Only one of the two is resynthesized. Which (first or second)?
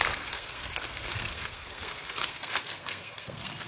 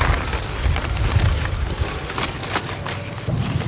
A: first